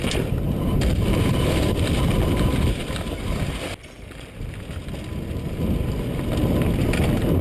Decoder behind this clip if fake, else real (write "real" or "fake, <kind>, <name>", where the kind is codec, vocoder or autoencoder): real